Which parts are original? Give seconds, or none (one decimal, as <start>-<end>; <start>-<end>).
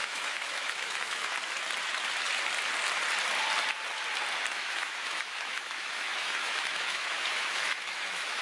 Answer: 1.2-4.5